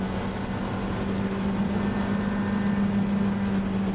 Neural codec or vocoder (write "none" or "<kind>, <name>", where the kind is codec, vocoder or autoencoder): none